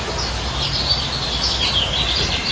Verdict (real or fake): real